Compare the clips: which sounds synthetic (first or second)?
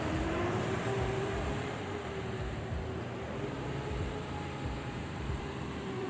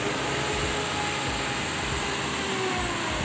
first